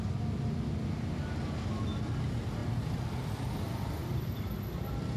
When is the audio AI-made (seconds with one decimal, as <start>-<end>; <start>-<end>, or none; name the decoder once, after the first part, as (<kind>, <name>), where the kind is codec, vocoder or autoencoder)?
none